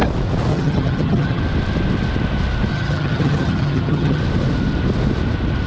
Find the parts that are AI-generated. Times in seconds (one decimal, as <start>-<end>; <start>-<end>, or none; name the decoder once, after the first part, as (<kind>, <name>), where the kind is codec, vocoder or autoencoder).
0.5-1.4 (vocoder, HiFi-GAN); 2.7-4.2